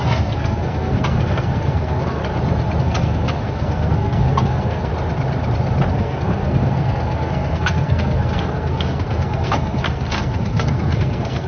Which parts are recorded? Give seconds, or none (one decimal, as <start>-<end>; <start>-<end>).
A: 2.2-2.8; 4.9-5.9

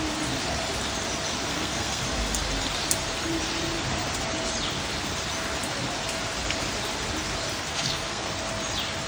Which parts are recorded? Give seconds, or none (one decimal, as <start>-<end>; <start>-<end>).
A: 0.0-1.5; 2.0-7.7; 8.3-9.1

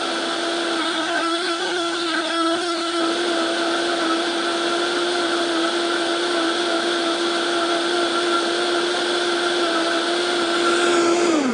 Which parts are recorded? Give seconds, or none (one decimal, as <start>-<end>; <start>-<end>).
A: 0.0-0.8; 3.0-11.5

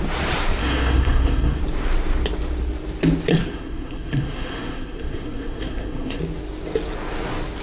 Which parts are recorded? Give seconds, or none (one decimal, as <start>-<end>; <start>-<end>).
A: 0.0-0.6; 1.6-3.3; 6.2-7.6